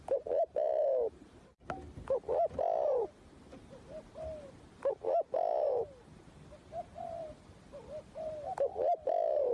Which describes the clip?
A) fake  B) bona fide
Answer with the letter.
B